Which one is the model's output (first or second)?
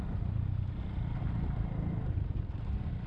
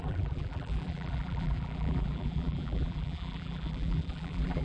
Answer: second